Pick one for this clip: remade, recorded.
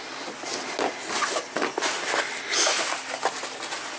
recorded